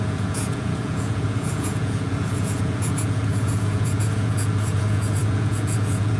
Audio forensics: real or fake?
fake